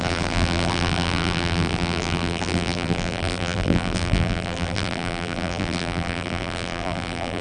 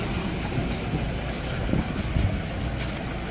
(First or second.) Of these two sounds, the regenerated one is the first